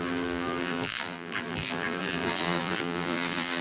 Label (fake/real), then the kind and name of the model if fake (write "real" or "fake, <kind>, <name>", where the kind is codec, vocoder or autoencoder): fake, vocoder, BigVGAN v2